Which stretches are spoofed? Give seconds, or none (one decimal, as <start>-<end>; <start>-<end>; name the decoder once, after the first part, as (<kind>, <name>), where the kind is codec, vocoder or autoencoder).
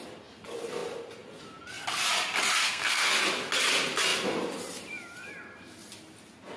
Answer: 2.6-3.1 (codec, SNAC)